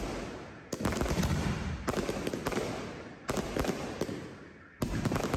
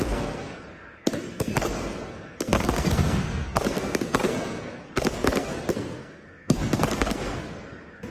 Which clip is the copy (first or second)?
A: second